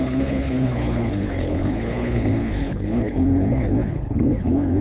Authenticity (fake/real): fake